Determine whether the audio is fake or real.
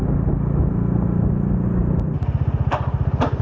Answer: real